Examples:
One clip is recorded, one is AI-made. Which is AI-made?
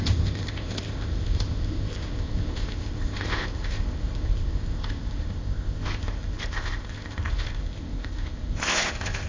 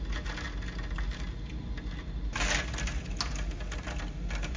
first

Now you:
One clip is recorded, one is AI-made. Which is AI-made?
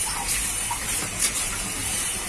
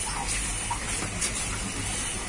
first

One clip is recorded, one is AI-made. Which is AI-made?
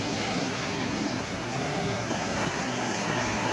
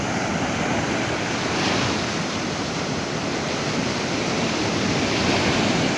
first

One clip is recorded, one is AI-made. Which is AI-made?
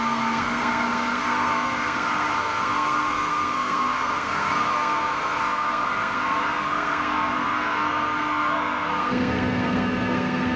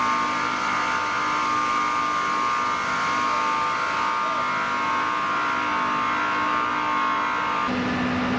first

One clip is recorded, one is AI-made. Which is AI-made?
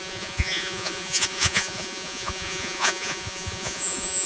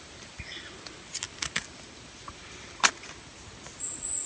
first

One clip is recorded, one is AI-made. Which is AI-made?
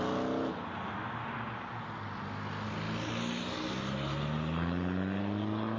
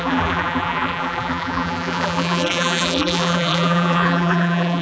second